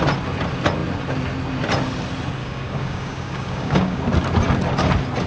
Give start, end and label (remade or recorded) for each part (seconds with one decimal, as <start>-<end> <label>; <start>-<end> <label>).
0.0-2.4 recorded; 2.4-4.0 remade; 4.0-5.3 recorded

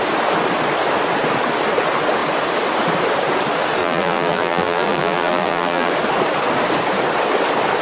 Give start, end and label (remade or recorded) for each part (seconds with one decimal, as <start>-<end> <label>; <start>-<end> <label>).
0.0-3.8 recorded; 3.8-5.9 remade; 5.9-7.8 recorded

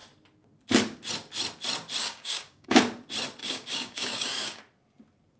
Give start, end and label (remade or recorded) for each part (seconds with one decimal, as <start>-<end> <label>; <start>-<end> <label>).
0.0-2.0 recorded; 2.0-2.8 remade; 2.8-3.4 recorded; 3.4-4.6 remade; 4.6-5.4 recorded